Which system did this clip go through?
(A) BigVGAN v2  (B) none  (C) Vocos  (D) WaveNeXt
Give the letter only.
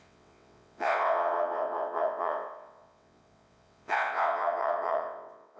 D